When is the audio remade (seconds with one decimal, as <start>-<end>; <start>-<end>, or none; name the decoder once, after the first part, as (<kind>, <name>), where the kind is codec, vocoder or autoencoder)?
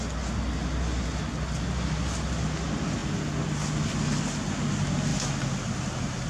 none